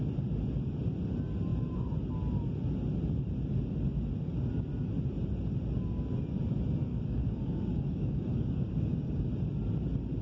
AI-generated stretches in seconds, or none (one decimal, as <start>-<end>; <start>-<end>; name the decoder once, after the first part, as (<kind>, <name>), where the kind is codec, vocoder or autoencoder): 6.9-9.3 (codec, DAC)

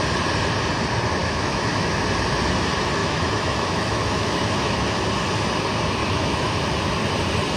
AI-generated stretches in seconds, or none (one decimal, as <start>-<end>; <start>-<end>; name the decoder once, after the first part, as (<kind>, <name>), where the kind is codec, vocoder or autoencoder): 1.2-1.9 (autoencoder, DAC-VAE); 3.0-5.0; 6.0-6.5

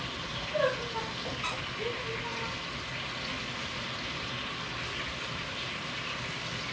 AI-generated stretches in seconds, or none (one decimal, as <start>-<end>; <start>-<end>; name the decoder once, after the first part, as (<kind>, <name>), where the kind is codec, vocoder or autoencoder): none

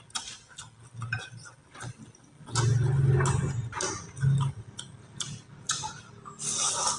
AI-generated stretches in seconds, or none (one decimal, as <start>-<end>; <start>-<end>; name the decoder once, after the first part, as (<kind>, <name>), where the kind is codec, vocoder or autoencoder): none

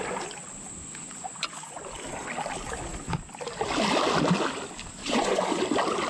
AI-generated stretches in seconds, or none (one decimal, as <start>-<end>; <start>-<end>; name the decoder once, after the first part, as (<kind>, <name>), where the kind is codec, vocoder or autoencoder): 0.8-1.5 (vocoder, Vocos); 5.0-5.6

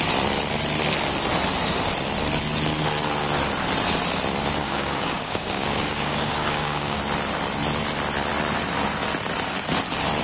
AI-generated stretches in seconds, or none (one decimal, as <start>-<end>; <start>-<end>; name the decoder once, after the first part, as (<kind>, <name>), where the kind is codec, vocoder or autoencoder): 4.6-7.0 (codec, DAC)

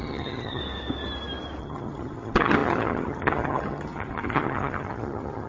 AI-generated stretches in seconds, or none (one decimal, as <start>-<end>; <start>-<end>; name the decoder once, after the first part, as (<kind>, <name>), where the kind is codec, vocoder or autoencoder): 0.0-0.6 (vocoder, HiFi-GAN); 1.6-5.5